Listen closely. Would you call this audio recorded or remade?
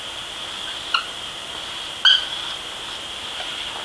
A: recorded